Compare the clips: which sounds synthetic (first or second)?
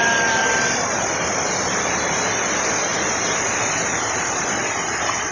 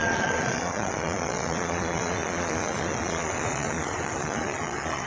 second